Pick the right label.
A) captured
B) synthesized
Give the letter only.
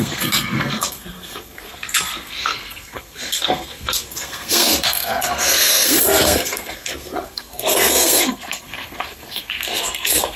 B